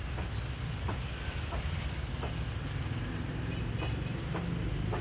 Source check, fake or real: real